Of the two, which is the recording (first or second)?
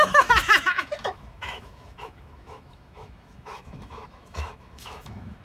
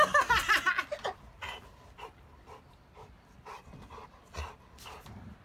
second